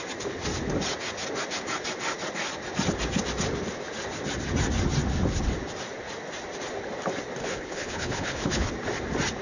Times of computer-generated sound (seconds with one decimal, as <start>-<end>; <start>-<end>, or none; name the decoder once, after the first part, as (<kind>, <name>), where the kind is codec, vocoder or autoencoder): 7.4-8.7 (codec, HILCodec)